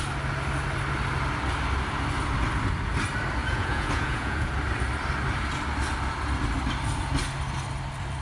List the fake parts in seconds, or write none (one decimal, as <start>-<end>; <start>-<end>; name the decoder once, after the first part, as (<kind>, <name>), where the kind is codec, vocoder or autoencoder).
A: 3.4-4.5 (vocoder, Vocos)